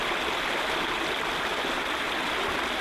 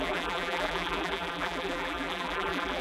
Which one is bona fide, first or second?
first